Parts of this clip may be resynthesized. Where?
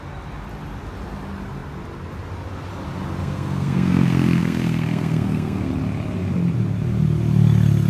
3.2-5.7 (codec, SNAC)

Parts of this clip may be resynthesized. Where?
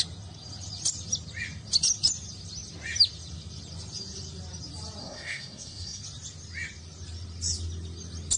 5.0-6.0 (codec, SNAC)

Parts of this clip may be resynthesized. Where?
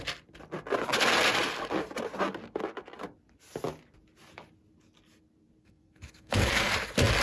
5.6-6.7 (codec, SNAC)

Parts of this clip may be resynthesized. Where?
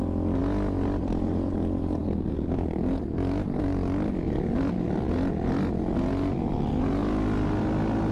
none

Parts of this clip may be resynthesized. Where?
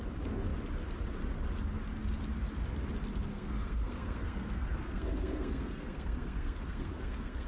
3.3-7.5 (codec, SNAC)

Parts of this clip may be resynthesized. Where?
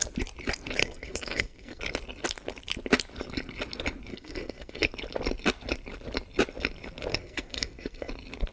0.8-1.8 (codec, SNAC); 4.1-4.9; 7.1-8.1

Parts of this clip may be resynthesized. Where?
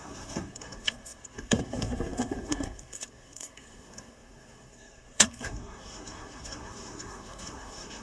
0.0-8.0 (codec, SNAC)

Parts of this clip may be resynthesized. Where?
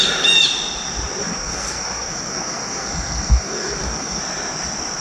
1.2-4.2 (codec, SNAC)